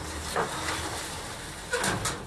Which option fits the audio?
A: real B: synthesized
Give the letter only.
A